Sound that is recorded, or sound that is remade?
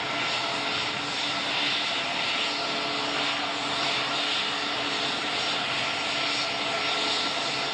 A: recorded